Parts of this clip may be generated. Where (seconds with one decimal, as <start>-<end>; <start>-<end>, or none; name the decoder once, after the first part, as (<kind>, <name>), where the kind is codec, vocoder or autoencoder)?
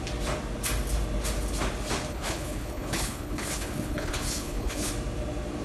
2.1-4.9 (codec, HILCodec)